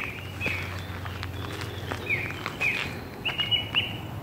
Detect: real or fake real